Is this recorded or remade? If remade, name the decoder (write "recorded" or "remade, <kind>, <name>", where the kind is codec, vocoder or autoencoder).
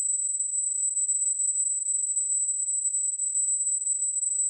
remade, vocoder, Vocos